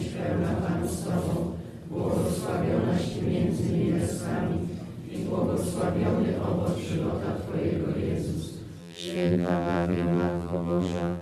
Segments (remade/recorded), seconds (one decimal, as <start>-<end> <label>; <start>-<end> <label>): 0.0-8.8 recorded; 8.8-11.2 remade